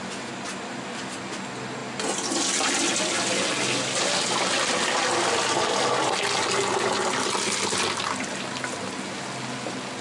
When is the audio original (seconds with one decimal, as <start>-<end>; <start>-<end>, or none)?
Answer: 0.0-10.0